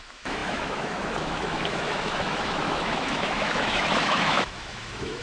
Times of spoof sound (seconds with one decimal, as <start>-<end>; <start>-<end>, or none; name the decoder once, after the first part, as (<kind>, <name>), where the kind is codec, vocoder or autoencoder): 0.0-5.2 (autoencoder, DAC-VAE)